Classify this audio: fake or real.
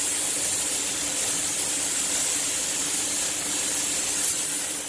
real